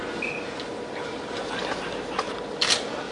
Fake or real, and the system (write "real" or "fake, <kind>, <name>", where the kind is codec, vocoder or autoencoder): real